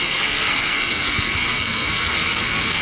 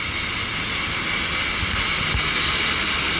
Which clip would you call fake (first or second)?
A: first